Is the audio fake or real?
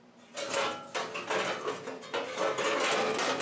real